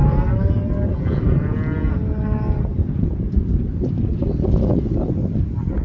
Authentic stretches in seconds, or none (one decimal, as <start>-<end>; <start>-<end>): 0.0-5.8